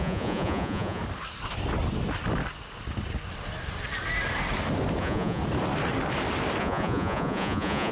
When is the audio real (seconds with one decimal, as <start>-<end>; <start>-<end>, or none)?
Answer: 1.0-5.0; 5.4-6.6